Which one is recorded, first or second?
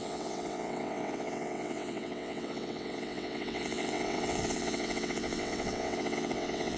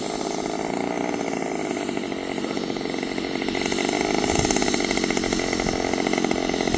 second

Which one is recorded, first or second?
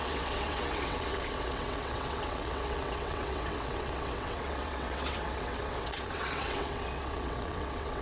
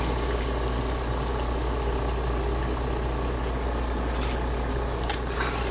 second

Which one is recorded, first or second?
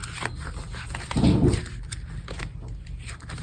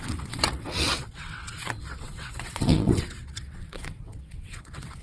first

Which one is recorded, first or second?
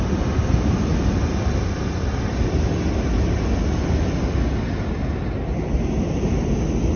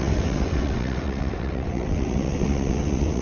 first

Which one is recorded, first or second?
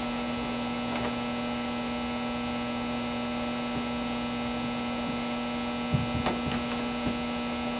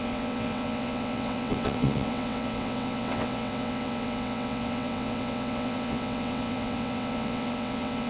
first